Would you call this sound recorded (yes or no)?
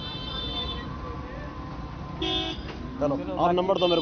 yes